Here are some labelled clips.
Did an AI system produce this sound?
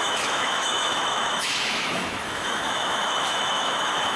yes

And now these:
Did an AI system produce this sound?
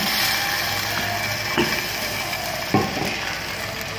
no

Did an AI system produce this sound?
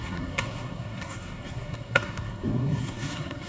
yes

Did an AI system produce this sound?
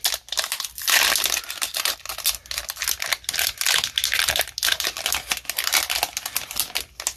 no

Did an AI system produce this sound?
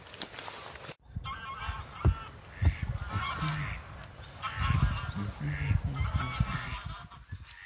no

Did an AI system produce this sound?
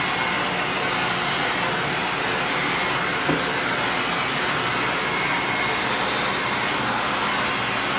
no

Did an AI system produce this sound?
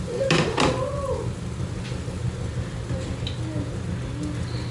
no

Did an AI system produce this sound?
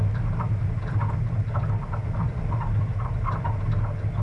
no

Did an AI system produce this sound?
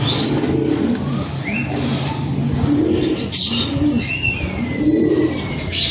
no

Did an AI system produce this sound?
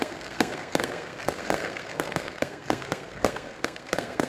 yes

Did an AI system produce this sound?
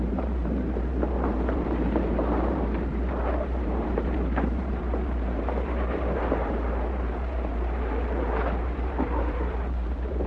yes